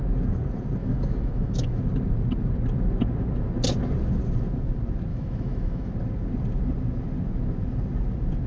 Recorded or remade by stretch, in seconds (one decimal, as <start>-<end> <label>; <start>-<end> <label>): 0.0-0.8 recorded; 0.8-1.8 remade; 1.8-5.1 recorded; 5.1-5.9 remade; 5.9-8.5 recorded